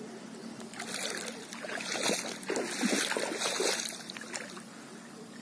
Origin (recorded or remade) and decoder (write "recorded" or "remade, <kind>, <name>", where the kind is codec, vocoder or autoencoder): recorded